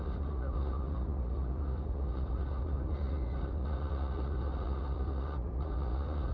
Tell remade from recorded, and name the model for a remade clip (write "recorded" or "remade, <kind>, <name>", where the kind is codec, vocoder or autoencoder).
remade, vocoder, Vocos